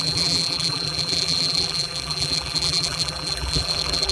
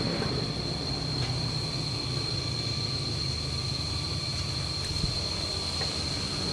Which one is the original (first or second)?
second